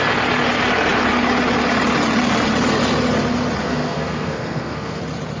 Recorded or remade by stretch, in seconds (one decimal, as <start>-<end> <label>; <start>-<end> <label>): 0.0-3.6 recorded; 3.6-5.0 remade; 5.0-5.4 recorded